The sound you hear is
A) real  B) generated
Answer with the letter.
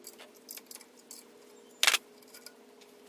A